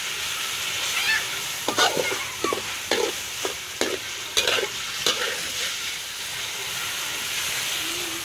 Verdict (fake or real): real